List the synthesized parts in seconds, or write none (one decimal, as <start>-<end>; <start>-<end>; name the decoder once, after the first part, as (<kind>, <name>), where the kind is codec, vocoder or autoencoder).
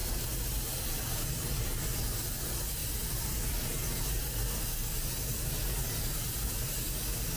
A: none